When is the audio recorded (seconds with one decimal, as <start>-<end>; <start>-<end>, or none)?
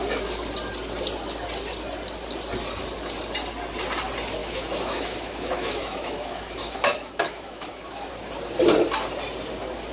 0.0-4.4; 8.1-9.9